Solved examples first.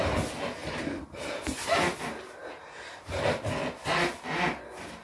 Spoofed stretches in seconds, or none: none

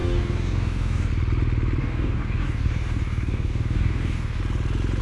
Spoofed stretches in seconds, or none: 0.0-1.1 (codec, DAC); 1.8-4.4

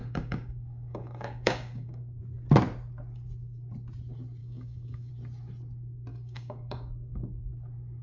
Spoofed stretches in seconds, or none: 0.0-2.2 (codec, DAC); 4.4-5.1; 6.1-7.5

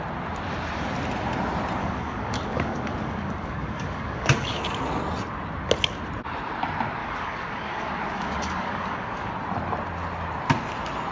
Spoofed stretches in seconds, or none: 1.8-4.6 (codec, DAC); 7.0-9.3